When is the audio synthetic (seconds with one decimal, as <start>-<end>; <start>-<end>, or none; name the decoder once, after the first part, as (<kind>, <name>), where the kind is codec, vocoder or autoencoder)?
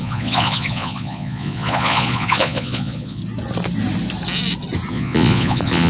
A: 0.0-3.2 (vocoder, Vocos); 4.9-5.9